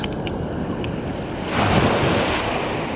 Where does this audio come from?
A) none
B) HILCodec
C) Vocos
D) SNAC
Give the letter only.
A